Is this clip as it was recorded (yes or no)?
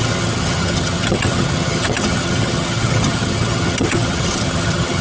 no